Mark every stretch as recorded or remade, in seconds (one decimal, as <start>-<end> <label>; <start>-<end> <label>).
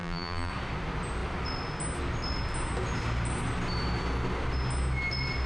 0.0-0.5 remade; 0.5-5.5 recorded